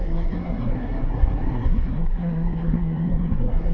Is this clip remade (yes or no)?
yes